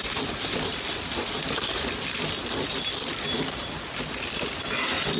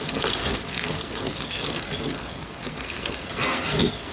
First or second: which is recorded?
first